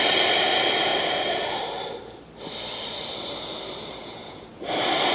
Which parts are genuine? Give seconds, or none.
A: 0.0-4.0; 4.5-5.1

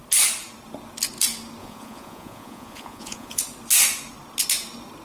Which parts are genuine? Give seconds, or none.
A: 0.0-1.6; 3.4-5.0

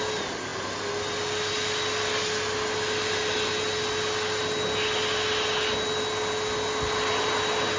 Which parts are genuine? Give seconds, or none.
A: 0.0-7.8

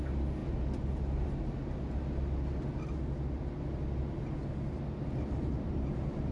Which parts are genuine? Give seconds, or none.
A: 0.0-6.3